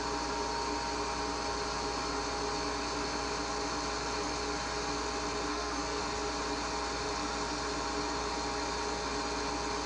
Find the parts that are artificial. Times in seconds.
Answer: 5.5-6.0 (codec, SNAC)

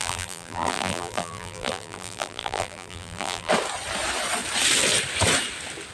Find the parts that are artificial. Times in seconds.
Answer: 0.0-3.5 (vocoder, BigVGAN v2)

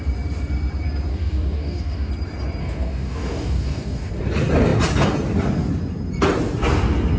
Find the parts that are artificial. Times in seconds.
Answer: 1.1-2.1 (codec, DAC); 2.6-4.1

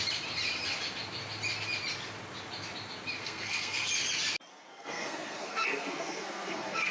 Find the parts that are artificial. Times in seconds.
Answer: 3.2-3.9 (codec, SNAC); 4.5-6.9